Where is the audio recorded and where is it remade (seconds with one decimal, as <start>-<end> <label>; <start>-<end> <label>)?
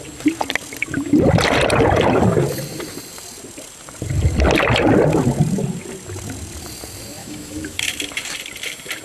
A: 0.0-7.2 recorded; 7.2-7.8 remade; 7.8-9.0 recorded